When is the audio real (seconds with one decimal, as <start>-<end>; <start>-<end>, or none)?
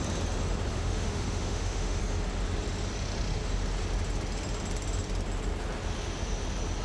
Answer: 0.0-0.7; 2.0-6.8